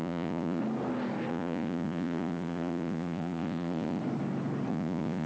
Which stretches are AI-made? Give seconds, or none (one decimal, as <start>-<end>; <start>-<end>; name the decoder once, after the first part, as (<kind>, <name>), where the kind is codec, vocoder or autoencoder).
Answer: 0.0-0.6 (vocoder, Vocos); 1.3-4.0; 4.7-5.3